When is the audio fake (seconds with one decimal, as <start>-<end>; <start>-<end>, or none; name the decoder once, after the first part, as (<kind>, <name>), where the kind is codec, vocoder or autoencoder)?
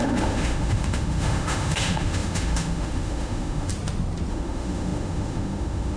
0.0-3.7 (autoencoder, DAC-VAE); 4.3-6.0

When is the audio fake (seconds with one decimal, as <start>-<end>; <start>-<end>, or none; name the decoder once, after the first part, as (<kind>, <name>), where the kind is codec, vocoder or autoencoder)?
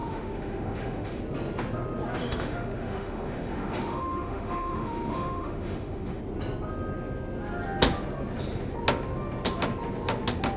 0.0-1.2 (autoencoder, DAC-VAE); 2.2-6.2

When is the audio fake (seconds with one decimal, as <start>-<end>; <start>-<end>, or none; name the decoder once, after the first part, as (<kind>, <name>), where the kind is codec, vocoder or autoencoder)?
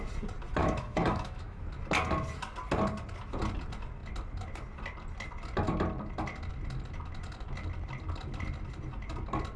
0.6-1.6 (autoencoder, DAC-VAE)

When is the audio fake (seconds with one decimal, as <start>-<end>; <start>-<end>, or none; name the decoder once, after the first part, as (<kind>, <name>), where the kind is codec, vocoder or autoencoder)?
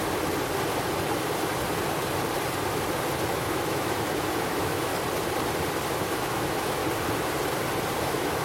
3.3-4.9 (autoencoder, DAC-VAE); 5.9-6.8; 8.0-8.4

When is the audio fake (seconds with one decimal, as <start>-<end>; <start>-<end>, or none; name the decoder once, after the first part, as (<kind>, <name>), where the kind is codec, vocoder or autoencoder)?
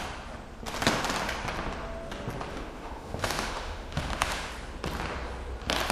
2.5-4.5 (autoencoder, DAC-VAE)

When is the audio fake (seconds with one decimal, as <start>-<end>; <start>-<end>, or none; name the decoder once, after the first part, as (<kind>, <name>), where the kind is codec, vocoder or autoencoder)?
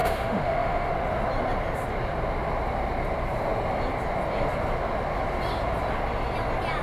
0.0-0.9 (autoencoder, DAC-VAE)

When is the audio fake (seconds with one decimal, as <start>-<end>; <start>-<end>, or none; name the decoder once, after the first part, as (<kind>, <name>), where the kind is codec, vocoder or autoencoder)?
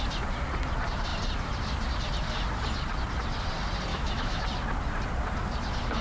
3.9-4.4 (autoencoder, DAC-VAE)